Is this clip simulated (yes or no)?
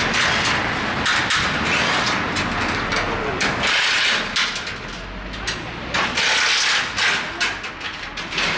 no